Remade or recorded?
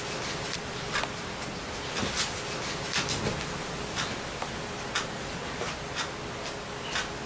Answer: recorded